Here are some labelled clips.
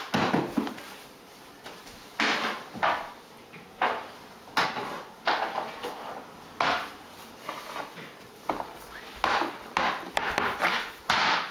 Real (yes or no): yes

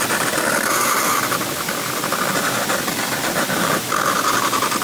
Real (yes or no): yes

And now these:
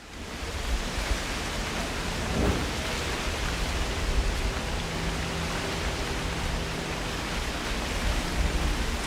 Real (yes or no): yes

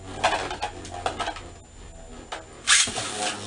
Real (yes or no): yes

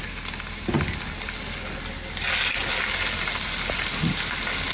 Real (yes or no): yes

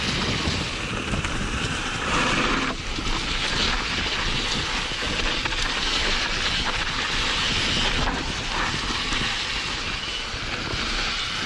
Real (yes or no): yes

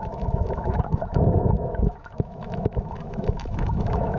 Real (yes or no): no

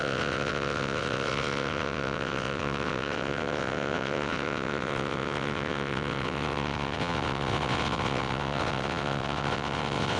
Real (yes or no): no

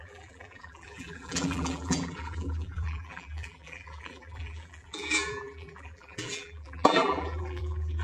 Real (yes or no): no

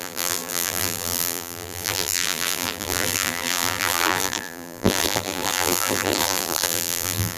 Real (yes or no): no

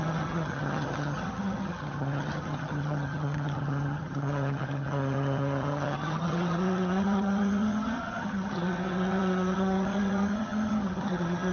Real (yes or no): no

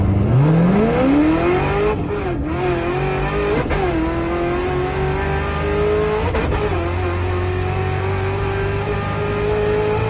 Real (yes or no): yes